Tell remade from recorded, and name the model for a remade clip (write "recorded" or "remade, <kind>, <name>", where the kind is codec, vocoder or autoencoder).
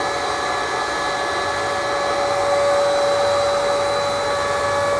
recorded